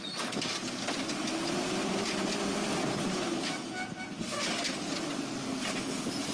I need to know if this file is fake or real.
real